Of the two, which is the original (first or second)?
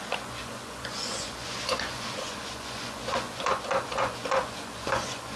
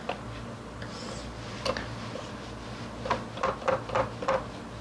second